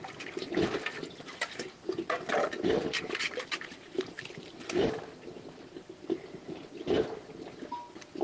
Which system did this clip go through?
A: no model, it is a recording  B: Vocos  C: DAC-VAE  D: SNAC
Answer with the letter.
A